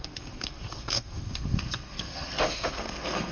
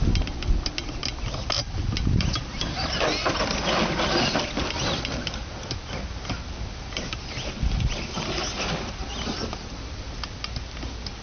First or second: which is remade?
first